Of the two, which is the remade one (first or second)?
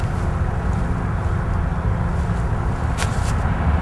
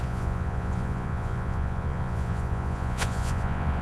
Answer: second